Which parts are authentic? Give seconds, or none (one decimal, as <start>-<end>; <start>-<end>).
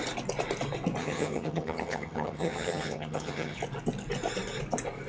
0.0-1.0; 3.6-5.1